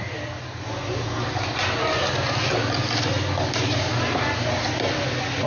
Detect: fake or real real